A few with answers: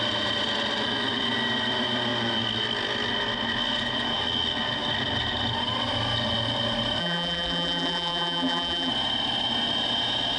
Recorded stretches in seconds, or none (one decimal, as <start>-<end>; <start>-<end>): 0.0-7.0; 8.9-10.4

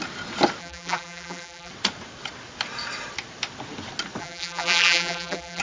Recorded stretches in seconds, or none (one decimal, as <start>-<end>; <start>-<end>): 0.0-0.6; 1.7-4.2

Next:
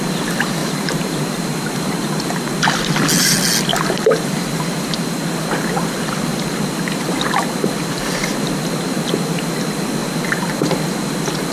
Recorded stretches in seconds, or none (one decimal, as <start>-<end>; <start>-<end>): 0.0-0.6; 1.3-3.7; 4.3-11.5